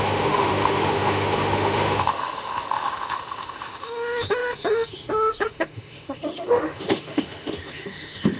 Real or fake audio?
fake